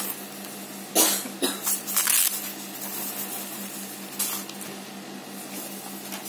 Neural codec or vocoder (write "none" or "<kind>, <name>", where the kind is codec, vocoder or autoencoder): none